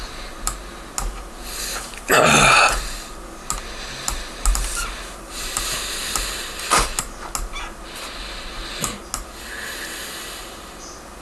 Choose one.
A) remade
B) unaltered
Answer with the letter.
B